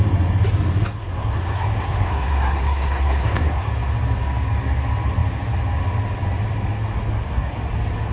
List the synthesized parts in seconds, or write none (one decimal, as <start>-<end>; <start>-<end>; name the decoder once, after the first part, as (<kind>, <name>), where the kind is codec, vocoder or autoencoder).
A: 1.0-3.7 (codec, SNAC); 7.1-7.6